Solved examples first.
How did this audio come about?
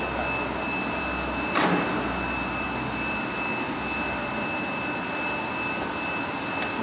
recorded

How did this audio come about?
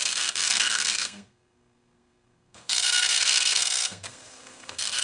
remade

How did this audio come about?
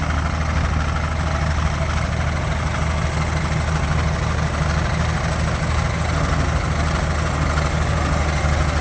recorded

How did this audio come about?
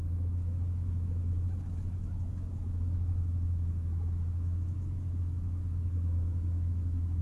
remade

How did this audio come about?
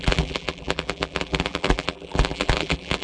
remade